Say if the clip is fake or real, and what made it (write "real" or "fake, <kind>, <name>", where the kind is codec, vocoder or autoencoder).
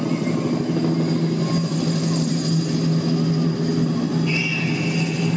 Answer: real